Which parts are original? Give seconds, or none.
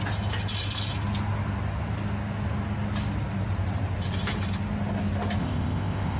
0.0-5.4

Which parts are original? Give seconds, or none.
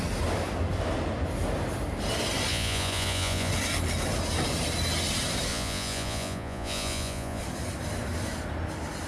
0.0-2.5; 3.5-5.5; 7.4-9.1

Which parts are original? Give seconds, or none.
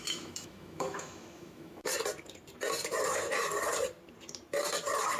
1.9-5.2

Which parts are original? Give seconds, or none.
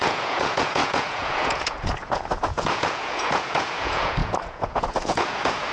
none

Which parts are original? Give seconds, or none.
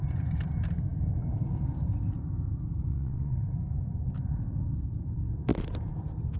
0.0-2.9; 3.5-6.4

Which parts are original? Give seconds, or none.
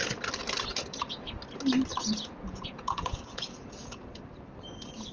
0.0-0.7; 1.3-1.9; 4.1-5.1